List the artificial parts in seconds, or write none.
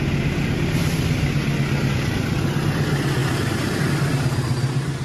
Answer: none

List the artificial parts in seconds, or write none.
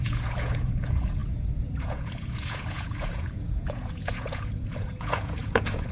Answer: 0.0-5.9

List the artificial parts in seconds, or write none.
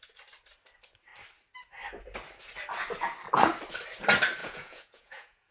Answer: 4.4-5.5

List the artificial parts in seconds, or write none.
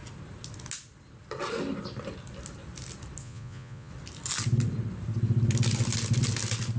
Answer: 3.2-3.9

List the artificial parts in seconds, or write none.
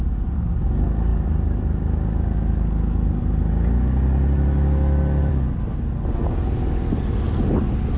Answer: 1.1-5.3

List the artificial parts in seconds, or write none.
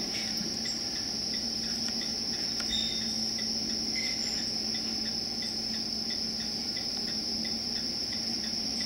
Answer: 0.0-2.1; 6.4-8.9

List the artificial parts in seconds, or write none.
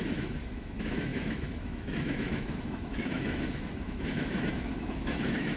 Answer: 0.0-5.6